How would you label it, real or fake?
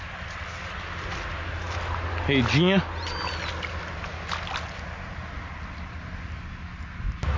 real